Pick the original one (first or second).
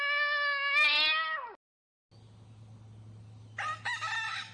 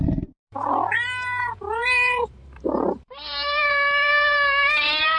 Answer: first